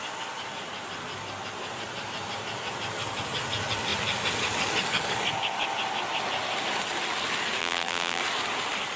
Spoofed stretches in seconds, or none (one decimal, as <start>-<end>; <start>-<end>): 7.6-8.2